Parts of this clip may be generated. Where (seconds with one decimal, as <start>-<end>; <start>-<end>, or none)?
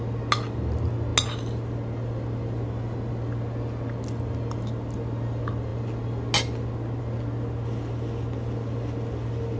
none